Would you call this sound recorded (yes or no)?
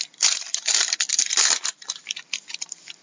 no